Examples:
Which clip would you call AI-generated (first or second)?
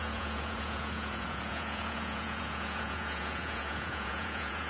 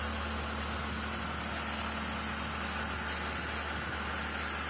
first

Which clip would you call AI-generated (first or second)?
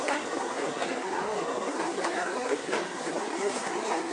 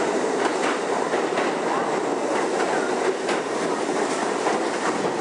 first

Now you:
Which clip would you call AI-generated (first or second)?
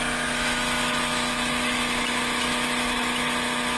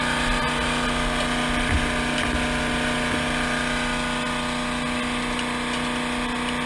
first